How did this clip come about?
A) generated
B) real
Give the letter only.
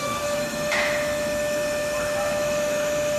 A